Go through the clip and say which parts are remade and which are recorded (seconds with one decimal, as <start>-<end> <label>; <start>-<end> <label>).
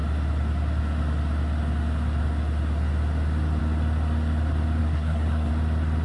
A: 0.0-4.8 recorded; 4.8-5.5 remade; 5.5-6.0 recorded